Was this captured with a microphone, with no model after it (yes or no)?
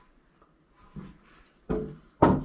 yes